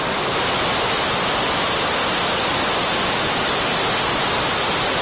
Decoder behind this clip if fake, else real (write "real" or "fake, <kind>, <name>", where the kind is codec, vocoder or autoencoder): real